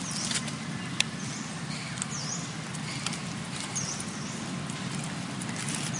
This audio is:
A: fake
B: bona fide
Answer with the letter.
B